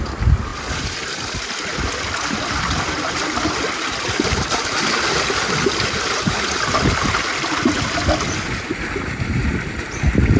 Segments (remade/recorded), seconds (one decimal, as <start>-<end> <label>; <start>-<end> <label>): 0.0-10.4 recorded